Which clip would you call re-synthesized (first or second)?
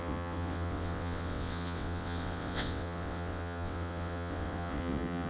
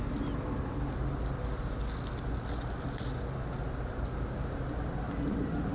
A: first